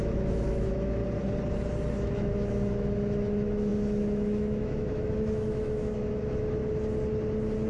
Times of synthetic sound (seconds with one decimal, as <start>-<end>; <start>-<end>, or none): 0.0-1.0; 1.9-6.6